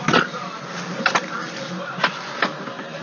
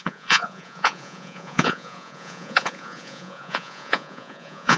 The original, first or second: first